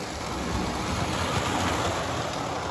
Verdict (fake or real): real